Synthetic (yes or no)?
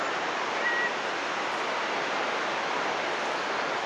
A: no